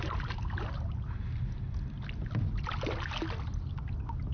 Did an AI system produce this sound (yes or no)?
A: no